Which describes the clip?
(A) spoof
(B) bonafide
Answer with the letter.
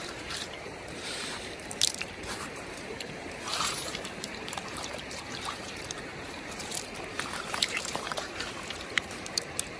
A